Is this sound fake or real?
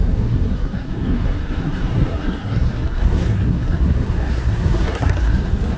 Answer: fake